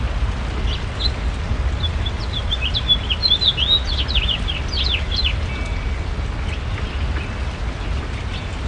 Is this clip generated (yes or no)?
no